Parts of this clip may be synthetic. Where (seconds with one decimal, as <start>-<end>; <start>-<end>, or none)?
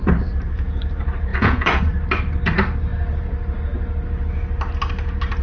1.3-1.8